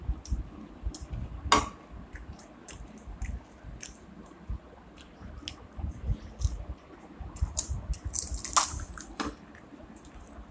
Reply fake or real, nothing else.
real